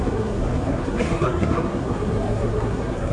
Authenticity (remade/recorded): remade